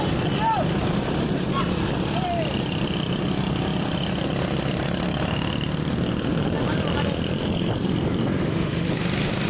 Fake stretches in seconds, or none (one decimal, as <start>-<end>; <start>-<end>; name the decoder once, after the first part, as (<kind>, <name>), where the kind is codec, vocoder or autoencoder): 8.4-8.9 (autoencoder, DAC-VAE)